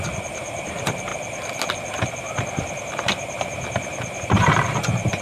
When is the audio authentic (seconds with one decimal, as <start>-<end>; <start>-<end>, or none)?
1.1-4.2